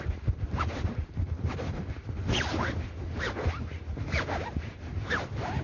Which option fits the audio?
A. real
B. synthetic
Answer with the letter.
A